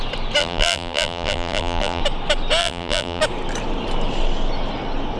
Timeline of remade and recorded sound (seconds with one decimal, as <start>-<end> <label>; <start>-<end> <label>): 0.0-0.4 recorded; 0.4-2.0 remade; 2.0-2.6 recorded; 2.6-3.2 remade; 3.2-5.2 recorded